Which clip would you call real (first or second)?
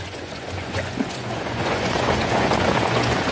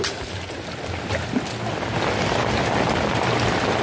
second